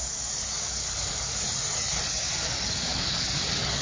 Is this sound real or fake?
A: fake